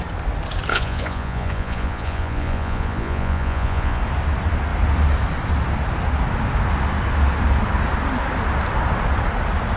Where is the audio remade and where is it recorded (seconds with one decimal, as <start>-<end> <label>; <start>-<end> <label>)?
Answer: 0.0-0.7 recorded; 0.7-4.0 remade; 4.0-9.8 recorded